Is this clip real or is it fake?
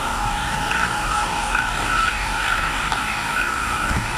fake